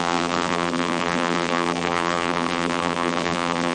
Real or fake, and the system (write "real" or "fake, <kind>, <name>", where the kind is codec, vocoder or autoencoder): fake, vocoder, BigVGAN v2